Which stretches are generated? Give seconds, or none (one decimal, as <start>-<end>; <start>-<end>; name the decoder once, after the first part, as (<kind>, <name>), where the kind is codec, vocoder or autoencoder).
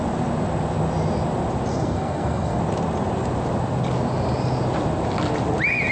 1.7-2.6 (codec, SNAC)